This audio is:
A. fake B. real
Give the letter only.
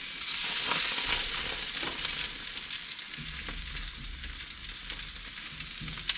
B